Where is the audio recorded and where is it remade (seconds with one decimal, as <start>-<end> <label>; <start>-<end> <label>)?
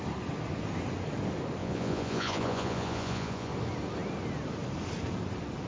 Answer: 0.0-1.6 recorded; 1.6-3.5 remade; 3.5-5.7 recorded